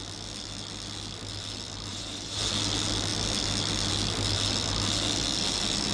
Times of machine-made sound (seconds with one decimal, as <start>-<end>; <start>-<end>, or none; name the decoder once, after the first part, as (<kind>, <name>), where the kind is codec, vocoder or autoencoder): 1.9-2.5 (vocoder, BigVGAN v2)